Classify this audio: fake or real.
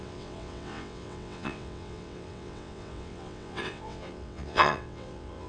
fake